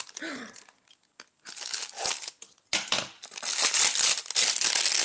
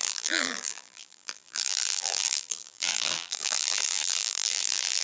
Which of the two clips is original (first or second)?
first